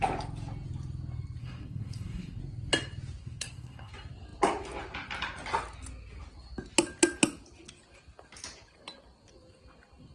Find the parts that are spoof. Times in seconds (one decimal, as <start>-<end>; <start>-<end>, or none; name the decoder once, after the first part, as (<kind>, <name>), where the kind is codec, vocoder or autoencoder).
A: 1.4-2.4 (codec, SNAC); 3.2-3.9